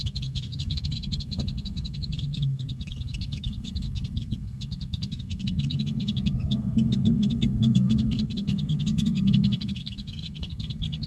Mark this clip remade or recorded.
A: remade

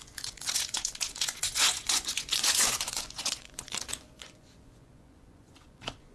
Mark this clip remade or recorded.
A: remade